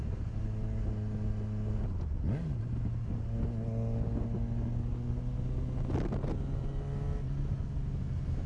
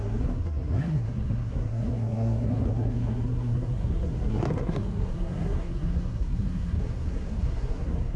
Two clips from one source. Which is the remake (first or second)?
second